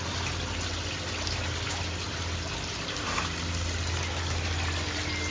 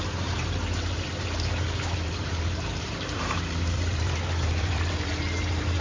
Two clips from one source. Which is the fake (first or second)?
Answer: second